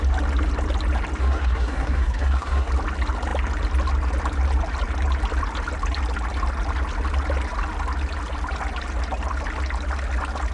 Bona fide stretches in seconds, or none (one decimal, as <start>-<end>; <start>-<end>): 0.0-1.2; 2.7-10.5